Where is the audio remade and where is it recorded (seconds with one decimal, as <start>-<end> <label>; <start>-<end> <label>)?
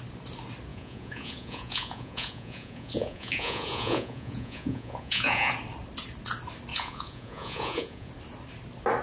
0.0-0.7 recorded; 0.7-5.5 remade; 5.5-6.7 recorded; 6.7-8.1 remade; 8.1-9.0 recorded